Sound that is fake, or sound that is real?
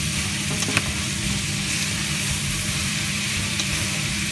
fake